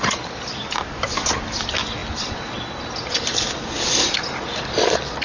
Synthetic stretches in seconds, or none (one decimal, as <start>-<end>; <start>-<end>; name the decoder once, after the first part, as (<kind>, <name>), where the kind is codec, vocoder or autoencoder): none